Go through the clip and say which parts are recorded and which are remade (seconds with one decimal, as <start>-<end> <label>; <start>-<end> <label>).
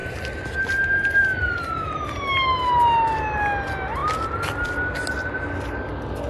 0.0-6.3 recorded